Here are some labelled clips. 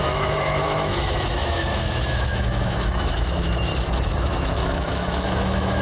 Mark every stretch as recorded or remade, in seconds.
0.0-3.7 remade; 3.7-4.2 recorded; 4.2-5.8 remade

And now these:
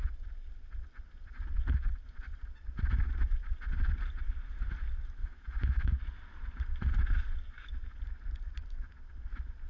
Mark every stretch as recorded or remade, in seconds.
0.0-5.2 recorded; 5.2-6.0 remade; 6.0-9.7 recorded

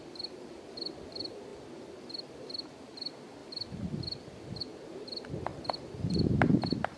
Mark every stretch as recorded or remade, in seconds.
0.0-7.0 recorded

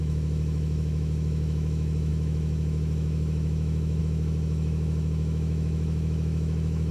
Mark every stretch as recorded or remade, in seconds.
0.0-6.9 remade